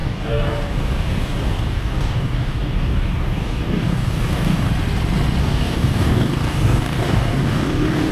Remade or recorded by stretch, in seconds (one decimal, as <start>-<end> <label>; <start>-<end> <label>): 0.0-4.7 remade; 4.7-5.4 recorded; 5.4-8.1 remade